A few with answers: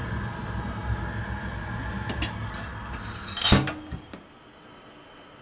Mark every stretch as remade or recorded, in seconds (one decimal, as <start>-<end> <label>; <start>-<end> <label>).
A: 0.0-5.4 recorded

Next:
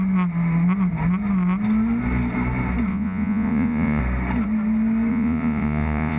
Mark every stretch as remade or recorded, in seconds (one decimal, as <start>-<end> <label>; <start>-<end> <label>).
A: 0.0-2.9 recorded; 2.9-4.0 remade; 4.0-5.1 recorded; 5.1-6.2 remade

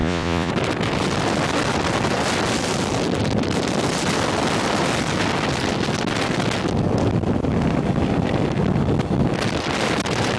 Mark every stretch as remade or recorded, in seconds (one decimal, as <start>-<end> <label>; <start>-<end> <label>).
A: 0.0-0.5 remade; 0.5-10.4 recorded

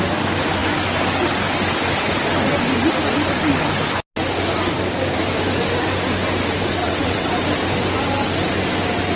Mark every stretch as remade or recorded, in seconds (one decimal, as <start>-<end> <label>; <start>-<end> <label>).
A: 0.0-6.8 recorded; 6.8-7.3 remade; 7.3-9.2 recorded

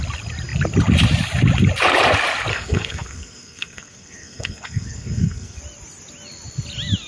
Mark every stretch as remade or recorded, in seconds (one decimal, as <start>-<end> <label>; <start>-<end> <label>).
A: 0.0-2.5 recorded; 2.5-5.6 remade; 5.6-7.1 recorded

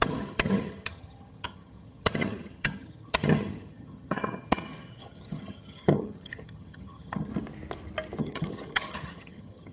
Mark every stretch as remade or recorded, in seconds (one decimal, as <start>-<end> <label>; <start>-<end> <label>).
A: 0.0-7.3 remade; 7.3-8.2 recorded; 8.2-9.7 remade

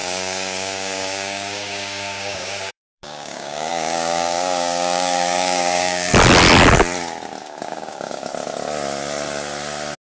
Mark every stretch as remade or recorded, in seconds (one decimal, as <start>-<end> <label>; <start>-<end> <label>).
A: 0.0-6.1 remade; 6.1-7.4 recorded; 7.4-8.3 remade; 8.3-10.1 recorded